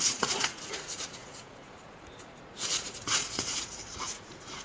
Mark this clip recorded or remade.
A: remade